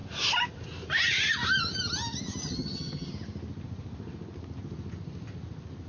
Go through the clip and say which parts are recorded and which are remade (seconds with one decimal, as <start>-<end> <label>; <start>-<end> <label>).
0.0-2.4 recorded; 2.4-3.1 remade; 3.1-5.9 recorded